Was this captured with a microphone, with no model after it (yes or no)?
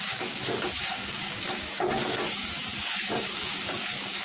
no